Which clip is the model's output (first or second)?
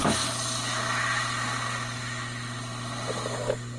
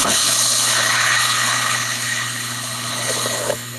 second